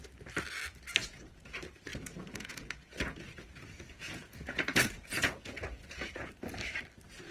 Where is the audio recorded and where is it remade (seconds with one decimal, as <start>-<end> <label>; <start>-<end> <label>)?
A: 0.0-1.0 recorded; 1.0-1.5 remade; 1.5-1.9 recorded; 1.9-6.3 remade; 6.3-7.3 recorded